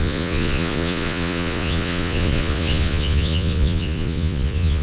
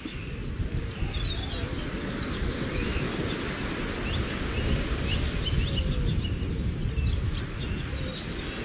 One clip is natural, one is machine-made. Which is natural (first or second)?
second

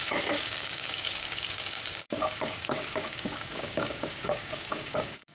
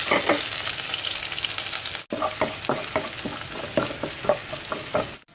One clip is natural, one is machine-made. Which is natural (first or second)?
second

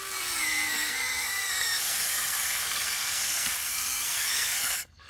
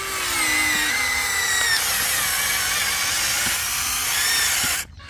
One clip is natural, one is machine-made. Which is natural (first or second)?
second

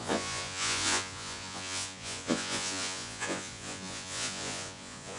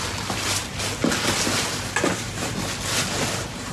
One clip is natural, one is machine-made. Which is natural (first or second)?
second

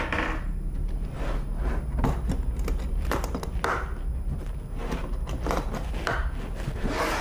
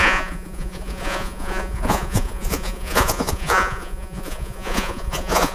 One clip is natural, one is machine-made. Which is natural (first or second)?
first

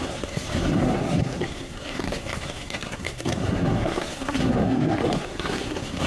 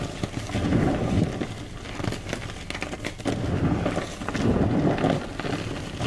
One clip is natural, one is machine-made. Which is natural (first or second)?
second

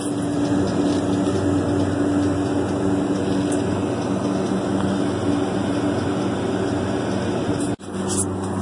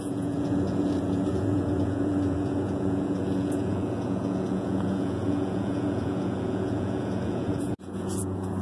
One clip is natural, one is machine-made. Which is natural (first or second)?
first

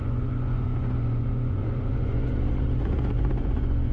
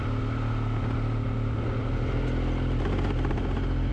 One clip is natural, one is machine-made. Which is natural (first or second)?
second